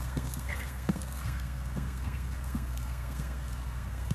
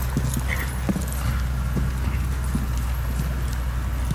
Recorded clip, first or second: second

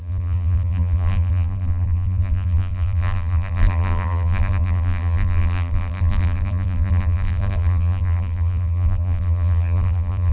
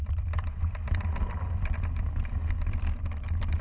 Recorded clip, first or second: second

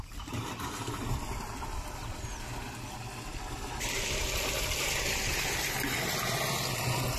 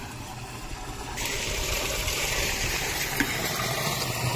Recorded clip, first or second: first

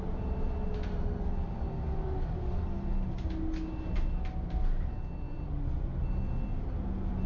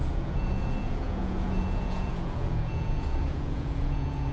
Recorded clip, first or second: first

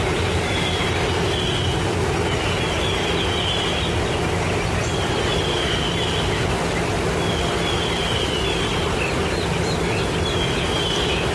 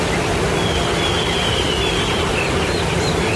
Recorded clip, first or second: first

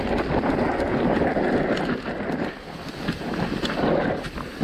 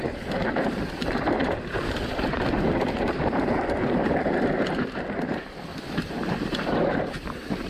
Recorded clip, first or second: first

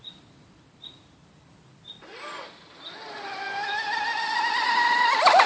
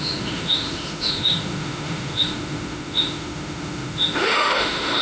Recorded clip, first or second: first